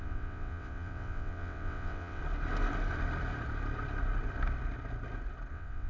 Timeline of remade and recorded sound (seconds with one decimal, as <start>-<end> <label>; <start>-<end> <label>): 0.0-2.2 remade; 2.2-5.5 recorded; 5.5-5.9 remade